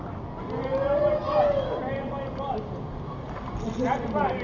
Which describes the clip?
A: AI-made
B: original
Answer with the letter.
B